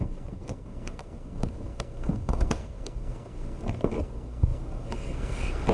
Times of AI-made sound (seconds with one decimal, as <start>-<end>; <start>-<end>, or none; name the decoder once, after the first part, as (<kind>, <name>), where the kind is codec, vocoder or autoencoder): 0.0-5.7 (codec, SNAC)